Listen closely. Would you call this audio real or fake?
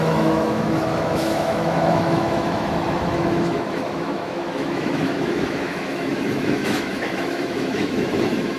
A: fake